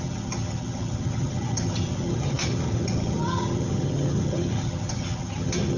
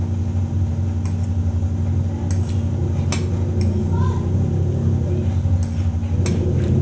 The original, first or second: second